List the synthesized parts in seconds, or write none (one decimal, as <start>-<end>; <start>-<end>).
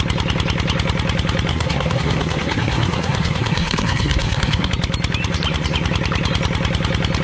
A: 1.5-4.7